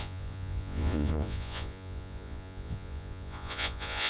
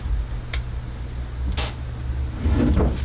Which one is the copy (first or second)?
first